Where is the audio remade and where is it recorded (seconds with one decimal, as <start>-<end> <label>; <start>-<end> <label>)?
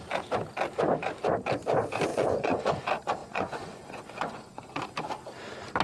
0.0-2.1 recorded; 2.1-2.8 remade; 2.8-3.2 recorded; 3.2-4.8 remade; 4.8-5.8 recorded